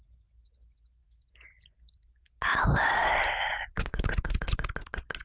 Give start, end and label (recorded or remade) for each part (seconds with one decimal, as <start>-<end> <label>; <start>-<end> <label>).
0.0-5.2 recorded